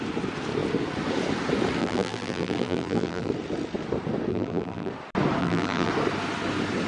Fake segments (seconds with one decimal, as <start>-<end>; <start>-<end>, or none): 1.8-3.3; 4.3-4.9; 5.4-5.9

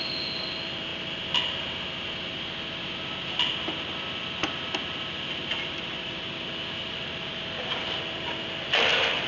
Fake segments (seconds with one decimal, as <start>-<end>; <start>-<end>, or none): none

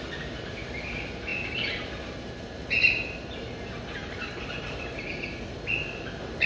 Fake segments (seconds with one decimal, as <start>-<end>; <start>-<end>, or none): 0.0-6.5

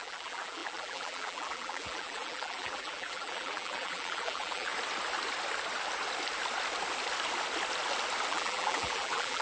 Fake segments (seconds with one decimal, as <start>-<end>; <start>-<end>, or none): 0.0-4.7; 8.3-9.4

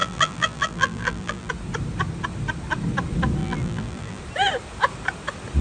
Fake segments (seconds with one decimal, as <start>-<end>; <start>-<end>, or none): 0.0-1.5; 3.4-4.2

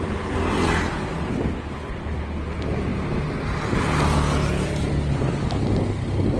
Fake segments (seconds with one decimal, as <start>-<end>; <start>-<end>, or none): none